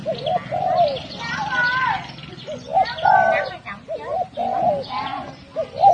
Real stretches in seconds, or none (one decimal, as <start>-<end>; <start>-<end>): 0.0-4.4; 5.2-5.9